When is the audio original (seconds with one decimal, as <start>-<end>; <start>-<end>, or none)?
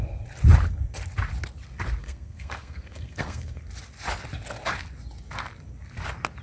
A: 0.0-2.0; 3.6-6.4